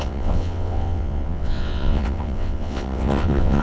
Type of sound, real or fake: fake